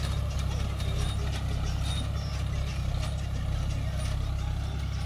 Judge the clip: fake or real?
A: real